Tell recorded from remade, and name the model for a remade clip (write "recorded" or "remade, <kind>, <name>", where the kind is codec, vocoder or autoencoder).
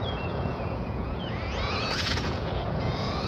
remade, vocoder, Vocos